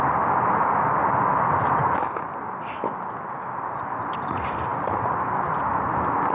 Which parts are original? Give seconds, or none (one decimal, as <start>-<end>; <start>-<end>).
0.0-6.3